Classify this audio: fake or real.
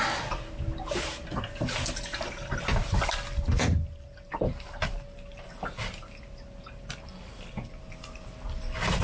real